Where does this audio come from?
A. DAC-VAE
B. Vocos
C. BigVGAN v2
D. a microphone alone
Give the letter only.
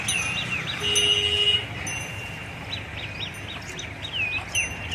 D